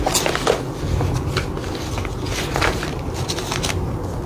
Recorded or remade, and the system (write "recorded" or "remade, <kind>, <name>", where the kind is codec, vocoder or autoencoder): recorded